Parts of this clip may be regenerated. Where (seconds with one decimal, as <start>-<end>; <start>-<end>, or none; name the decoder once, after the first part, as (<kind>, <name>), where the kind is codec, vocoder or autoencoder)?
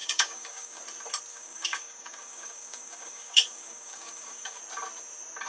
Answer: 0.0-0.8 (codec, DAC); 1.3-4.6